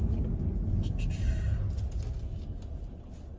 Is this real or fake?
real